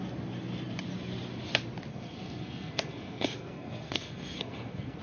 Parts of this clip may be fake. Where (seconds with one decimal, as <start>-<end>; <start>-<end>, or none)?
1.9-5.0